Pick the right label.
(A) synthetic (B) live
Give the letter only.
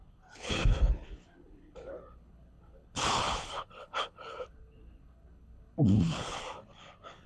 A